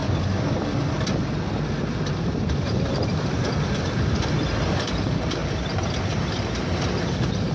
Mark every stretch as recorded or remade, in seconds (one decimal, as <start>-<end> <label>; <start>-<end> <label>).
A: 0.0-4.5 remade; 4.5-5.4 recorded; 5.4-6.1 remade; 6.1-7.5 recorded